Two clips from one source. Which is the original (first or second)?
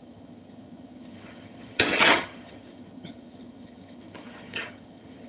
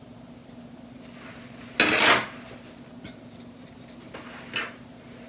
second